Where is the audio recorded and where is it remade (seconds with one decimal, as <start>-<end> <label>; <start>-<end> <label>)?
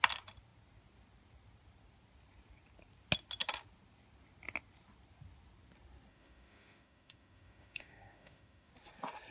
0.0-6.1 recorded; 6.1-8.7 remade; 8.7-9.3 recorded